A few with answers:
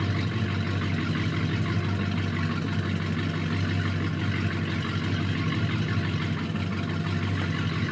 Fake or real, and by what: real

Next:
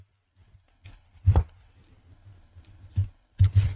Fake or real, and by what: real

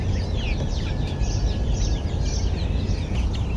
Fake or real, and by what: real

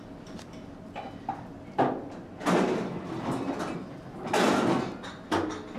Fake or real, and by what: real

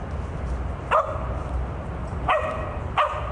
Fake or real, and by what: real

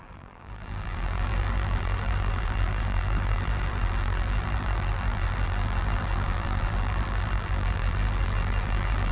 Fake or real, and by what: fake, vocoder, BigVGAN v2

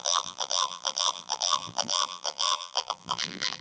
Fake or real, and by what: fake, vocoder, BigVGAN v2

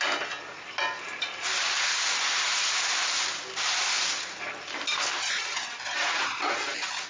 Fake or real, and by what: real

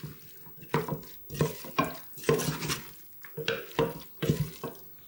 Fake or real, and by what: real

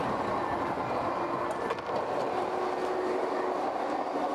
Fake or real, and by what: real